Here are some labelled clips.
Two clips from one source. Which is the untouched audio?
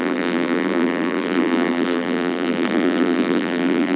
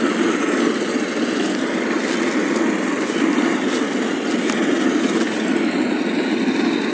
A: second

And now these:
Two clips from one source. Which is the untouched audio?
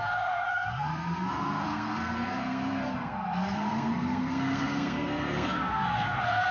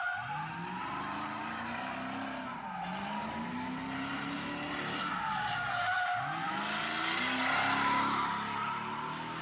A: second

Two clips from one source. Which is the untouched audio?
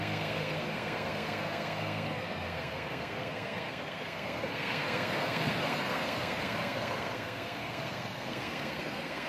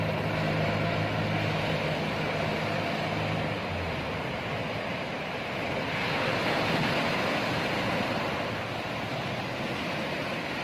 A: second